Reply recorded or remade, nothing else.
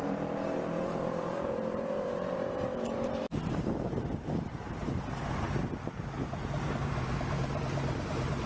remade